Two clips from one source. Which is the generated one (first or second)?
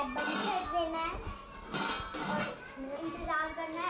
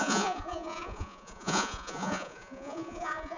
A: second